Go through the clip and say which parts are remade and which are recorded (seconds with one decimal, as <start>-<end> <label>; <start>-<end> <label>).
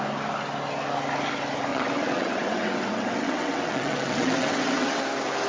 0.0-1.7 recorded; 1.7-5.0 remade; 5.0-5.5 recorded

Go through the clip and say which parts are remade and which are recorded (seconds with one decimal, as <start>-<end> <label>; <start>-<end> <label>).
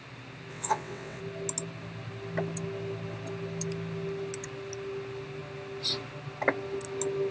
0.0-0.5 recorded; 0.5-1.2 remade; 1.2-7.3 recorded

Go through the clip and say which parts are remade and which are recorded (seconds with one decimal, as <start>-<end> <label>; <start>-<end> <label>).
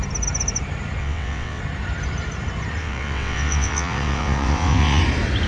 0.0-1.0 recorded; 1.0-1.6 remade; 1.6-2.8 recorded; 2.8-5.0 remade; 5.0-5.5 recorded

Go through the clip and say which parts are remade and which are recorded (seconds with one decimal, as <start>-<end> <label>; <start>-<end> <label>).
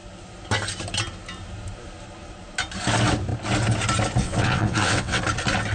0.0-4.2 recorded; 4.2-5.2 remade; 5.2-5.7 recorded